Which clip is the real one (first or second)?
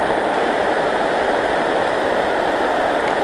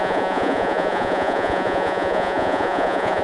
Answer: first